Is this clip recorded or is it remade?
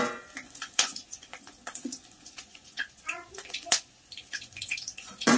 remade